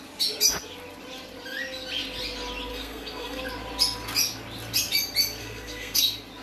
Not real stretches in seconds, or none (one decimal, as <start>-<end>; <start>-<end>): 2.7-3.4; 5.4-6.0